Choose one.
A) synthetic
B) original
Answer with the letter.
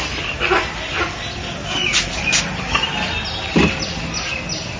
B